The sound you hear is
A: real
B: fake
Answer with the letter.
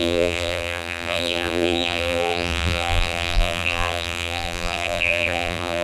B